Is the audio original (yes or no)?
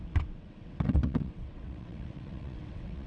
no